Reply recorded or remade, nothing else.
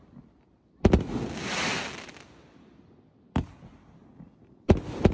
recorded